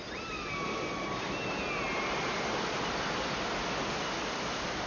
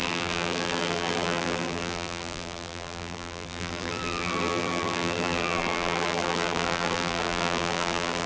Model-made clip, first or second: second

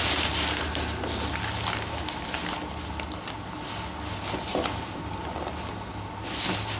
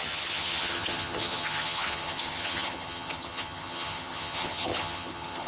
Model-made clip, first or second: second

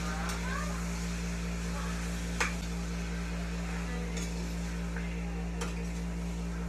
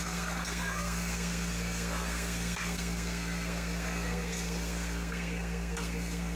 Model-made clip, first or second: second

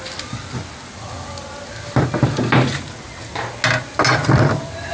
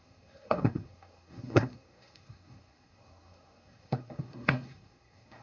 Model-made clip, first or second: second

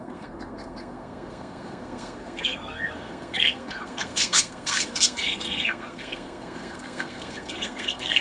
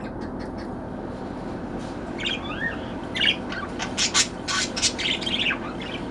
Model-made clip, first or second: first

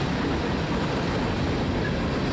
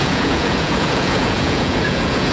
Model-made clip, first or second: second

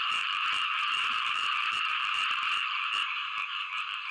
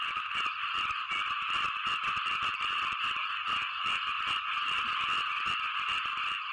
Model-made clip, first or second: first